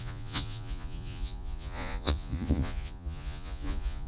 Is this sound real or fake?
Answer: fake